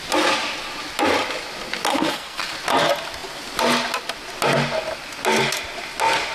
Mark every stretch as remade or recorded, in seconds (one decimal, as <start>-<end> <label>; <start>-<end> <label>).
0.0-1.9 recorded; 1.9-2.5 remade; 2.5-6.3 recorded